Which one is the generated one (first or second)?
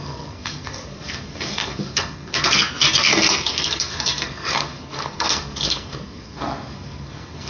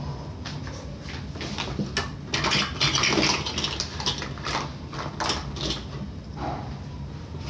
first